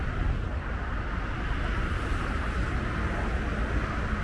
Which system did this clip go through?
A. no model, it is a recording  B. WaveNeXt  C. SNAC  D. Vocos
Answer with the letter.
A